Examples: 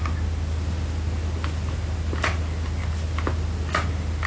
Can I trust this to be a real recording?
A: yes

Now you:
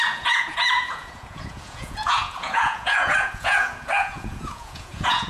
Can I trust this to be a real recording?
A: no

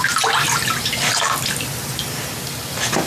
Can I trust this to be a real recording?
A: yes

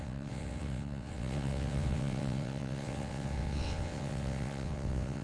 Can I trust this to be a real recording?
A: no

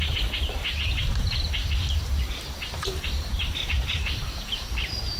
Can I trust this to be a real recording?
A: no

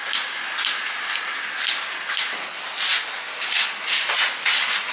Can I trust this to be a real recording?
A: yes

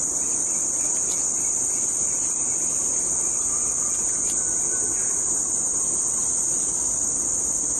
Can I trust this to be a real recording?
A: yes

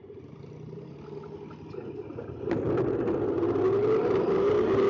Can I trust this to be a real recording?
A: yes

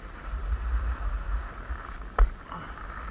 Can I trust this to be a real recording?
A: yes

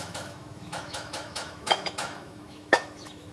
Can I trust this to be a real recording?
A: no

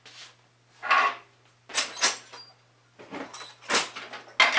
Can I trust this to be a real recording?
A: yes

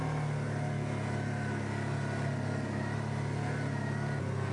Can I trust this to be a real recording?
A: yes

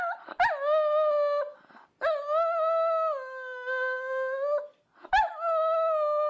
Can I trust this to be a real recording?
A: yes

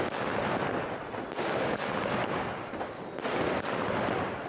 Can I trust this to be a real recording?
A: yes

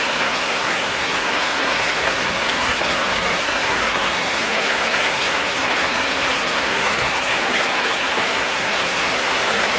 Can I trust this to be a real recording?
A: no